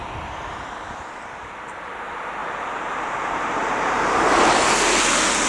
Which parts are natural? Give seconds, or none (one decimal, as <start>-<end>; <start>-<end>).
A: 0.0-2.4; 5.0-5.5